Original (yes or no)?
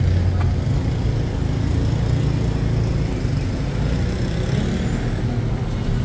yes